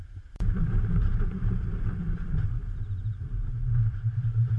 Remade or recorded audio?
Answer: remade